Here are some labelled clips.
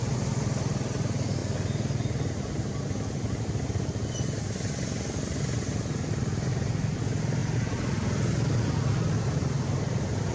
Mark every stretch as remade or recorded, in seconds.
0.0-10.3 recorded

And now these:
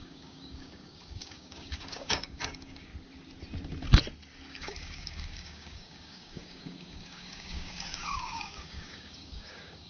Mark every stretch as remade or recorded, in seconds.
0.0-2.9 remade; 2.9-4.5 recorded; 4.5-9.9 remade

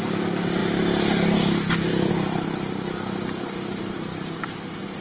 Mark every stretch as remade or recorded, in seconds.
0.0-5.0 recorded

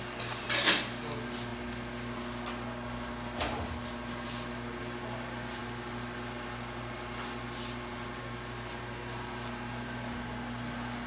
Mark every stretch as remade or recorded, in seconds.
0.0-11.1 recorded

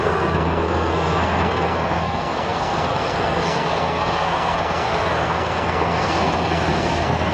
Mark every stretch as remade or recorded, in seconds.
0.0-7.3 remade

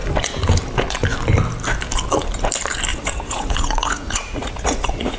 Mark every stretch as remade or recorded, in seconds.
0.0-2.9 recorded; 2.9-5.2 remade